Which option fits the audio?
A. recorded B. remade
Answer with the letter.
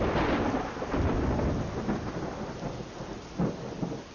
A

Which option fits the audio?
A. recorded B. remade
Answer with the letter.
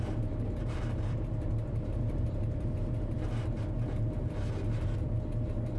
B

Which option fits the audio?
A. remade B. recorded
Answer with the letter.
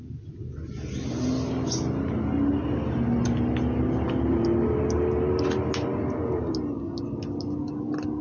B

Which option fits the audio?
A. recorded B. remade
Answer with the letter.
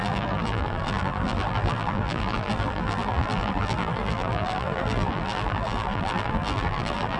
B